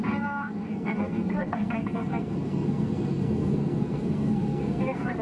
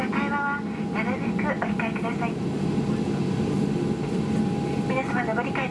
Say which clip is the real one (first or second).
second